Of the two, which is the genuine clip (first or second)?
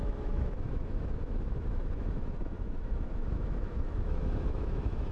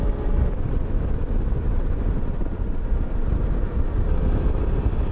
second